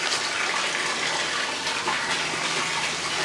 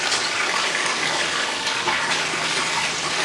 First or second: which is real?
first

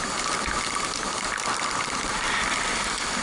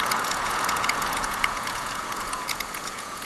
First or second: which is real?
first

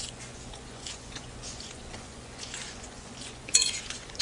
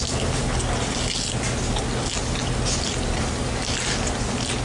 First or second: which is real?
second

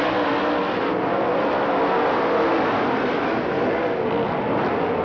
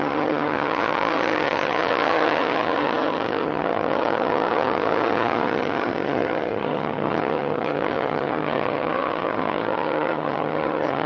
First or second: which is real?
first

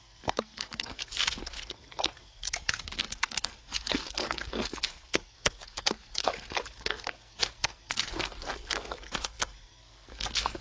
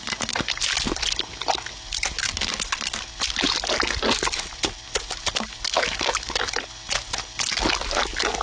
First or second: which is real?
second